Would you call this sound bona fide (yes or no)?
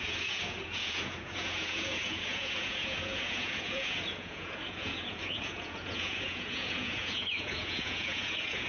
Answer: no